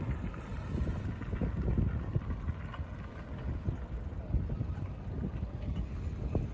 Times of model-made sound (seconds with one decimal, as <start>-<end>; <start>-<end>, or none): none